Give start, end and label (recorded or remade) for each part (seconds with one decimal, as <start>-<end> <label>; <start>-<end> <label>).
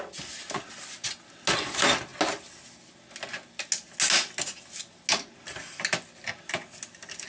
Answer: 0.0-7.3 recorded